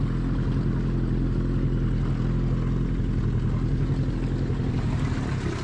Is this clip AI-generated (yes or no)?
no